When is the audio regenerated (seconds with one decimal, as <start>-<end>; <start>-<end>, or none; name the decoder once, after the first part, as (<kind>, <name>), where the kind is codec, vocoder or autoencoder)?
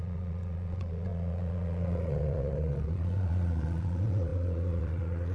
0.0-5.3 (vocoder, Vocos)